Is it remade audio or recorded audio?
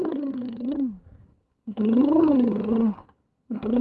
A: remade